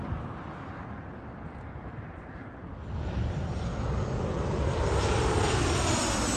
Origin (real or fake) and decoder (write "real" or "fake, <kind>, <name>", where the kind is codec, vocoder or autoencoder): real